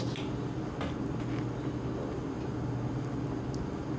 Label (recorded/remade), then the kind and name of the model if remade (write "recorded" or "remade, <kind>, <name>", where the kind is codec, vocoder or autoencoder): recorded